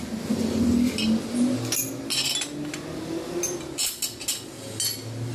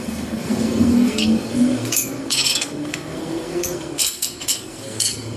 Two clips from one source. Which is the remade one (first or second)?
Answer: second